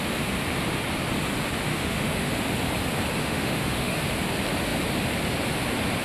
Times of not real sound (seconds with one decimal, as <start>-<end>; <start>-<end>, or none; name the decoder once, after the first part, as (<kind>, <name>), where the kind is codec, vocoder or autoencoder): 1.7-2.3 (autoencoder, DAC-VAE); 3.2-4.0